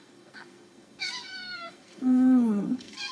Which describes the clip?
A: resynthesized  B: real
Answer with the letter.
A